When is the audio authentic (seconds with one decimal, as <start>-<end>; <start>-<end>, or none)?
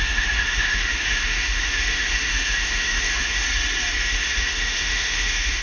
3.4-4.0